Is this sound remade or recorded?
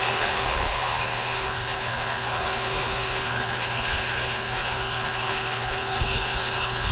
remade